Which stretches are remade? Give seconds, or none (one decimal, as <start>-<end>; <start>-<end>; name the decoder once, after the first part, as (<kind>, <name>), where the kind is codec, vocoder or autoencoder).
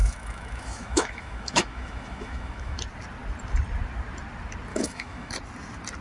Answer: 0.0-2.8 (autoencoder, DAC-VAE); 4.7-5.3